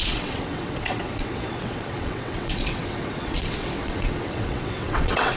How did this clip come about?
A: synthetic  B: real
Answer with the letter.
A